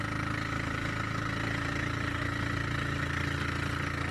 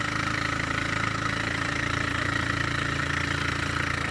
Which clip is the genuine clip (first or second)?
first